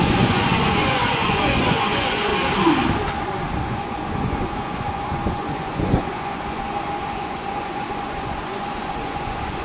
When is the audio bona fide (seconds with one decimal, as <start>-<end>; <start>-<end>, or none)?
2.3-3.6